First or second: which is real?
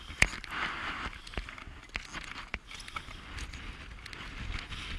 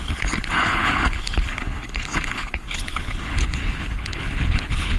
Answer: first